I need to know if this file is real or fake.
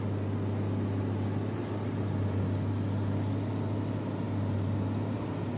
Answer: real